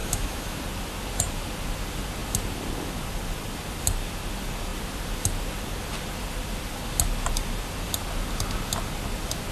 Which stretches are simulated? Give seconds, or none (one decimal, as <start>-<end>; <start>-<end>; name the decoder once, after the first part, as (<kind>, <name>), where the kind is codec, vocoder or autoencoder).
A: 0.0-0.6 (autoencoder, DAC-VAE)